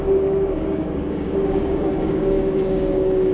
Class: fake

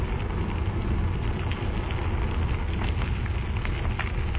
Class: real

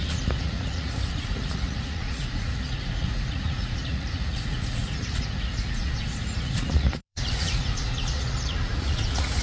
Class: fake